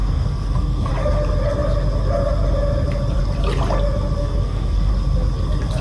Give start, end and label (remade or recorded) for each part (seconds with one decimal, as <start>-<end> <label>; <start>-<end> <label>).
0.0-0.9 remade; 0.9-4.2 recorded; 4.2-4.9 remade; 4.9-5.8 recorded